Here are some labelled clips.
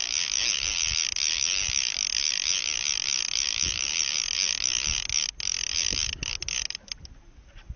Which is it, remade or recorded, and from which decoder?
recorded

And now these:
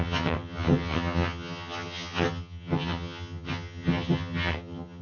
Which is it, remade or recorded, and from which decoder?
remade, vocoder, HiFi-GAN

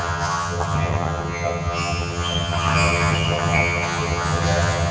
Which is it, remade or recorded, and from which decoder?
remade, vocoder, HiFi-GAN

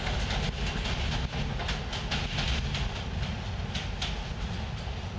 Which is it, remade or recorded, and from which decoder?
recorded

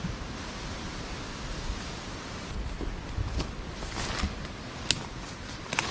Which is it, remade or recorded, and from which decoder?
recorded